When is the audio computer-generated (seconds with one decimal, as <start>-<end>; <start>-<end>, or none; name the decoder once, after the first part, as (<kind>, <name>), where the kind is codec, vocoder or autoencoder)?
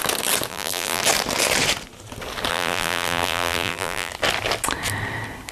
0.5-1.0 (vocoder, BigVGAN v2); 2.5-4.1